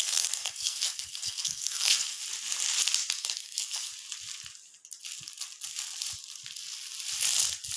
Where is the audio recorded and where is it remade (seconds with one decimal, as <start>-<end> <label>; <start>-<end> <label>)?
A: 0.0-2.2 remade; 2.2-3.1 recorded; 3.1-3.9 remade; 3.9-7.8 recorded